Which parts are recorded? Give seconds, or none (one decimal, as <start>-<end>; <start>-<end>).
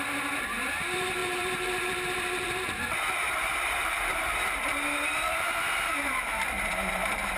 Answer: none